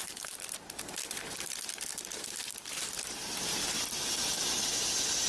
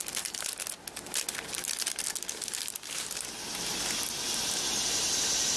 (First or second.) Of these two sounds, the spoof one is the first